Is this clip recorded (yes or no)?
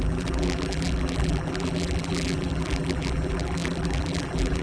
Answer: no